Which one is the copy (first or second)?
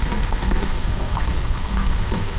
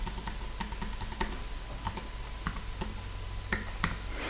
first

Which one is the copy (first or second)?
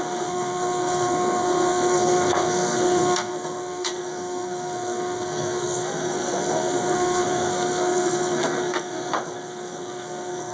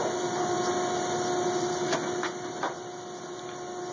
first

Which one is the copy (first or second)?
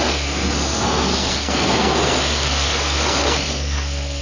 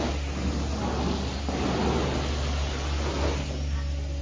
first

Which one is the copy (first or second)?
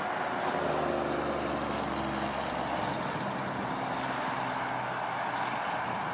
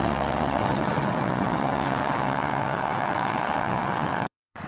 second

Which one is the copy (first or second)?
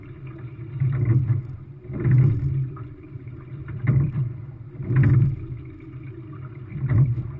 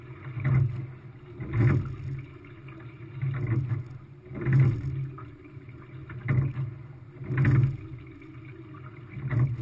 first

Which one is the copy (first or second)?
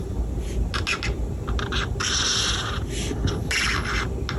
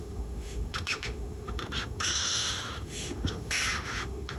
second